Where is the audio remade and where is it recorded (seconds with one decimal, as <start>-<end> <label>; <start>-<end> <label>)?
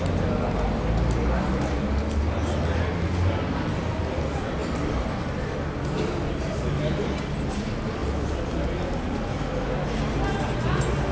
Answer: 0.0-11.1 recorded